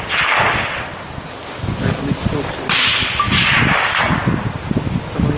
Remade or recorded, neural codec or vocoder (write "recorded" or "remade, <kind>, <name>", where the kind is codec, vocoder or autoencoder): recorded